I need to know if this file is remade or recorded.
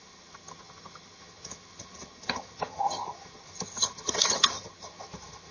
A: remade